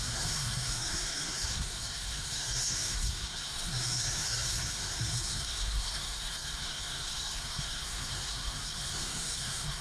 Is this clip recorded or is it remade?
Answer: remade